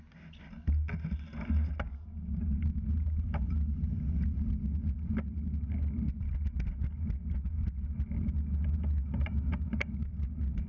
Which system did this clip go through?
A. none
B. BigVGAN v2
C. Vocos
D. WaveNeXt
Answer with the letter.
A